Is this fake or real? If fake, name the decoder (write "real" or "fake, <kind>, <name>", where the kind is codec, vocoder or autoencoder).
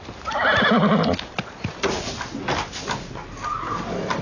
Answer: real